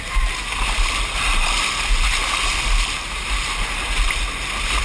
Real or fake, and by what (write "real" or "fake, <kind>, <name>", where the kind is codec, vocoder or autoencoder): real